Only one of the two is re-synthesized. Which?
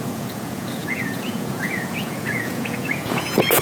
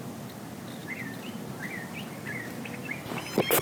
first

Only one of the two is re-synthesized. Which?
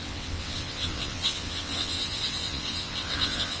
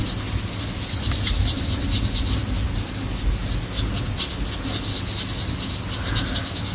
first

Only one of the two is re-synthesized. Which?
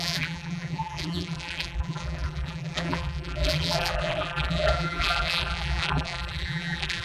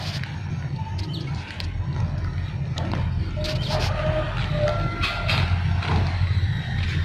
first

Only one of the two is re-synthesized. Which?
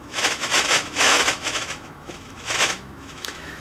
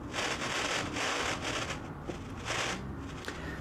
first